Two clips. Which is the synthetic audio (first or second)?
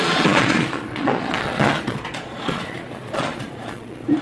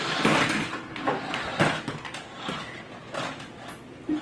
first